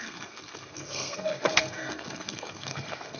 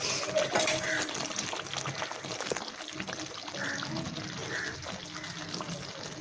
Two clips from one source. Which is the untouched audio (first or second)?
second